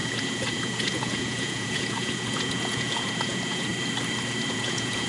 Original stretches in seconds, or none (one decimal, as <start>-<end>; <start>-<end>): 3.7-4.5